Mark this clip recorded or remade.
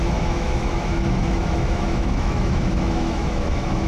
remade